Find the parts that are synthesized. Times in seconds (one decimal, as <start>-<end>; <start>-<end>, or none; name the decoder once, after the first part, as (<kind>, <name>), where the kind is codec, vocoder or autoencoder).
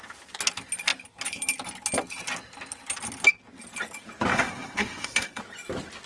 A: 4.3-5.4 (codec, SNAC)